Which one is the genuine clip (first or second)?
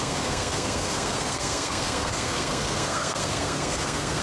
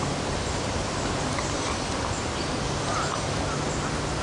second